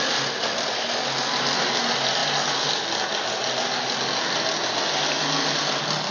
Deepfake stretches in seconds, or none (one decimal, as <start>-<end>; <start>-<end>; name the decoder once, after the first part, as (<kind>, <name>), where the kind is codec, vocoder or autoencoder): none

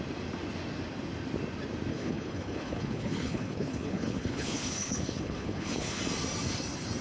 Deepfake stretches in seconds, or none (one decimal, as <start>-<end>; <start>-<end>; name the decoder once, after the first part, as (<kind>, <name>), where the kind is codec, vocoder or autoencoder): 1.9-6.0 (codec, HILCodec)

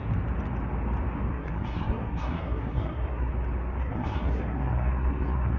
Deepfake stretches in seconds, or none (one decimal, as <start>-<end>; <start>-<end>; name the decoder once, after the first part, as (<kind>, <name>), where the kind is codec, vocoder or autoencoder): 1.3-3.3 (codec, SNAC); 3.8-5.6

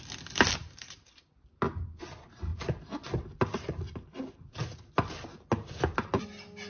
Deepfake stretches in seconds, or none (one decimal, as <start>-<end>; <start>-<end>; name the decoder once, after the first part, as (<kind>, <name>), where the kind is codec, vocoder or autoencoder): none

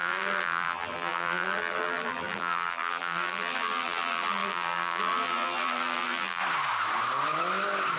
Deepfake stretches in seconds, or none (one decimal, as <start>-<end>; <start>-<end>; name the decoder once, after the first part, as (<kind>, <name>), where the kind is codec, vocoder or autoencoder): 0.0-6.4 (vocoder, BigVGAN v2)